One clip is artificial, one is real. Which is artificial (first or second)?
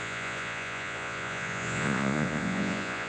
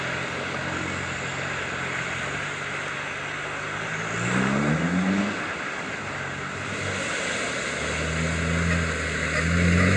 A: first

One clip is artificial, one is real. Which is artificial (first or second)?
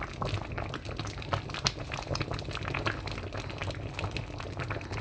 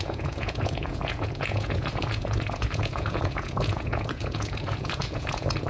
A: second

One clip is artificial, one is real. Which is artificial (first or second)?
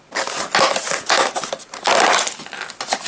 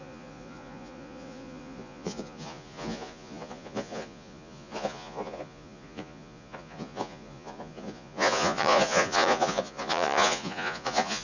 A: second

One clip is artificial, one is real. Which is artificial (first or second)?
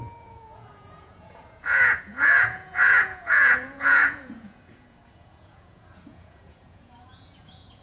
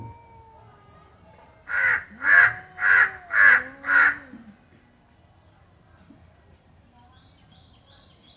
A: first